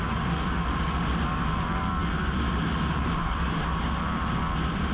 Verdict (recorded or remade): recorded